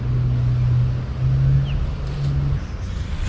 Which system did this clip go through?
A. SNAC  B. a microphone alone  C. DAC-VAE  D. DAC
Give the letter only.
B